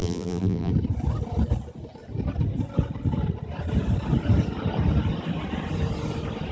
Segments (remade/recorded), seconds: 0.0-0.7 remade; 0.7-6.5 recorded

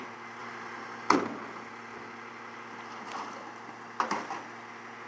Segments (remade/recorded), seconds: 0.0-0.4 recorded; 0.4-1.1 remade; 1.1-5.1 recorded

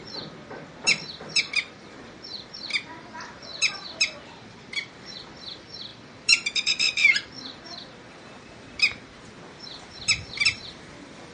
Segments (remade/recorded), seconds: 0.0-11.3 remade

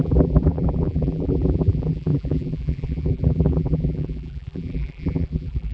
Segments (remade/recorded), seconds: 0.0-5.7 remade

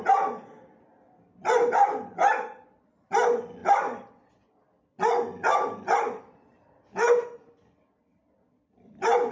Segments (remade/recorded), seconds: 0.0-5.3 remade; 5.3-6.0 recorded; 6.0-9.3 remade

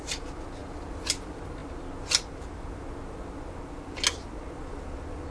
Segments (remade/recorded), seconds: 0.0-5.3 recorded